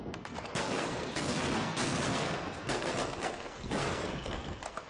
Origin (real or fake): fake